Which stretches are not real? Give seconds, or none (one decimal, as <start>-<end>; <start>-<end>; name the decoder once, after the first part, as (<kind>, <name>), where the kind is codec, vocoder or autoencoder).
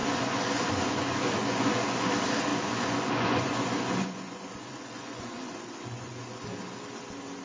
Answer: 0.0-2.1 (vocoder, Vocos); 2.5-6.4